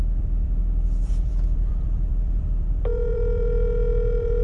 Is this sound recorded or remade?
remade